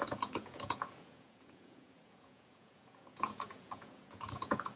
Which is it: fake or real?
fake